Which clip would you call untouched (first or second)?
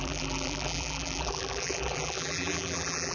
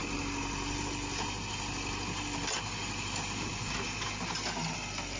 second